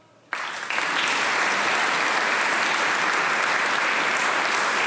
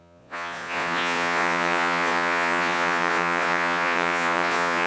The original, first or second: first